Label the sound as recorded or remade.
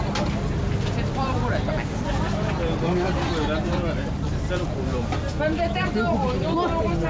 recorded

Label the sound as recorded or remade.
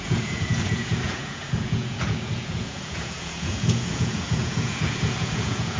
remade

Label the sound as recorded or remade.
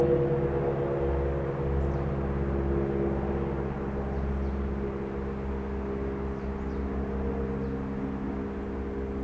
recorded